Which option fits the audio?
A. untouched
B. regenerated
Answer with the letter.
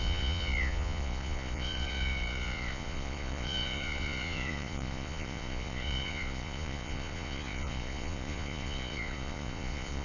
B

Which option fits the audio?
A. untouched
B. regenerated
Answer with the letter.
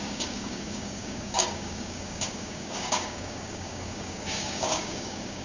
B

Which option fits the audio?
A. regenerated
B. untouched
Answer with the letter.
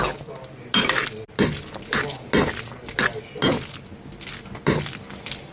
B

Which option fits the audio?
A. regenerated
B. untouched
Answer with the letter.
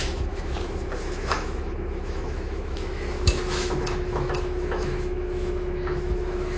A